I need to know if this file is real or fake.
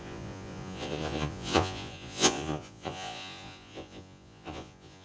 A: fake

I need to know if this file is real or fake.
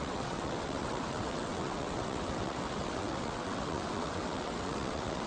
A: fake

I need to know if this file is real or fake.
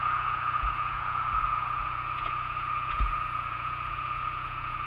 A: fake